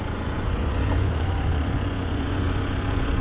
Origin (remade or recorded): remade